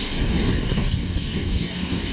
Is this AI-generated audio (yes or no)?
yes